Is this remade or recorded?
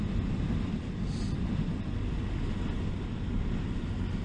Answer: recorded